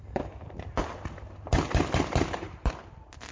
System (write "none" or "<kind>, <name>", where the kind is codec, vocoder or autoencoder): none